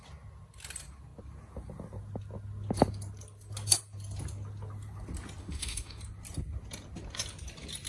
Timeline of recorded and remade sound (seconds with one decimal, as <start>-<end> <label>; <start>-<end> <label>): 0.0-5.4 recorded; 5.4-6.0 remade; 6.0-7.9 recorded